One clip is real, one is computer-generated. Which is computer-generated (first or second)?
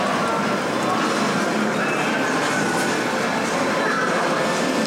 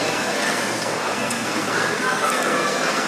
second